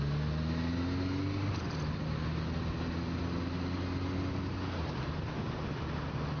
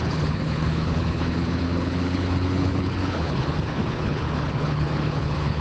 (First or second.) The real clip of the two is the first